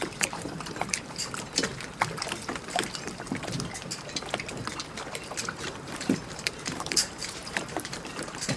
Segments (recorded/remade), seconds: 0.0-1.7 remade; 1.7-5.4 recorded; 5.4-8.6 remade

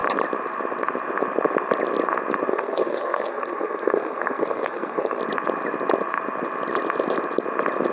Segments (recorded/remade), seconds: 0.0-2.5 recorded; 2.5-5.2 remade; 5.2-7.9 recorded

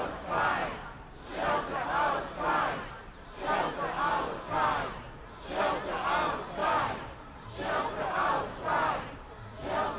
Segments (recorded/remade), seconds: 0.0-0.6 recorded; 0.6-2.2 remade; 2.2-6.6 recorded; 6.6-8.4 remade; 8.4-10.0 recorded

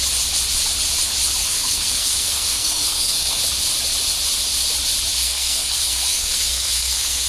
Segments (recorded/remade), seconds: 0.0-1.4 recorded; 1.4-3.4 remade; 3.4-5.2 recorded; 5.2-7.3 remade

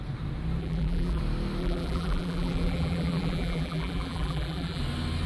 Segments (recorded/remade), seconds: 0.0-0.6 recorded; 0.6-1.2 remade; 1.2-1.6 recorded; 1.6-4.8 remade; 4.8-5.3 recorded